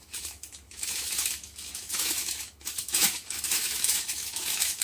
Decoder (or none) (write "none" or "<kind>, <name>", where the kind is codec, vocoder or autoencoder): autoencoder, DAC-VAE